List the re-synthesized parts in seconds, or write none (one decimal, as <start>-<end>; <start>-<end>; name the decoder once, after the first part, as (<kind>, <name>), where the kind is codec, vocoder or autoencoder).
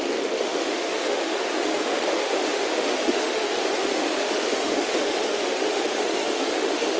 0.0-7.0 (autoencoder, DAC-VAE)